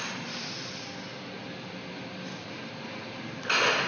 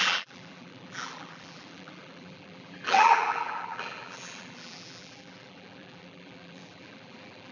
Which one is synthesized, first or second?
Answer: second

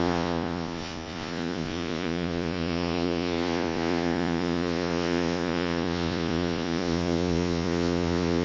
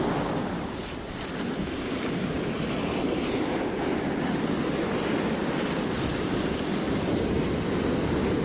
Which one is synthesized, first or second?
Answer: first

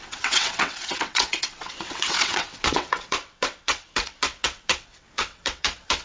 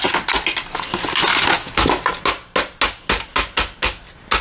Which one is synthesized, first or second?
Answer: first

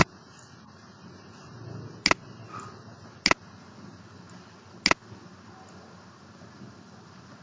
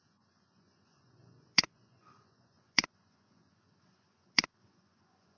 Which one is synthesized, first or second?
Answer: second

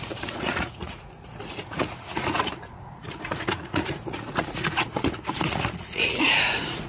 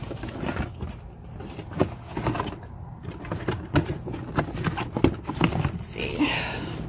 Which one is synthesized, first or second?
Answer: first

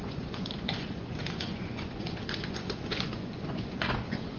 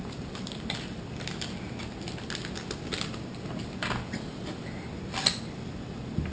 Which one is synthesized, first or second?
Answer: first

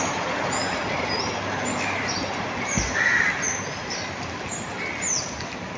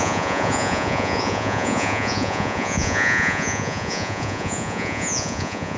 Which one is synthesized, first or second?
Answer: second